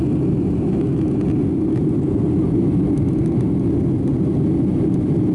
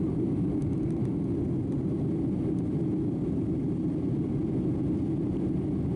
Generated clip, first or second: second